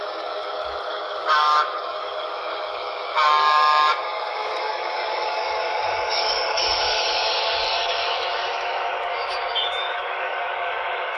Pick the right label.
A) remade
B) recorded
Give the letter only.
A